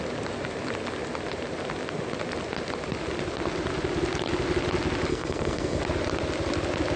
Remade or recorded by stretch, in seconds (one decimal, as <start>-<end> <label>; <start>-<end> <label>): 0.0-5.1 recorded; 5.1-5.8 remade; 5.8-7.0 recorded